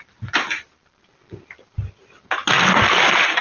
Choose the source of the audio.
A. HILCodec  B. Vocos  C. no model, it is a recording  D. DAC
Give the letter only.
C